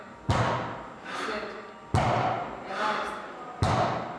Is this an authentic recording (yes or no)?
yes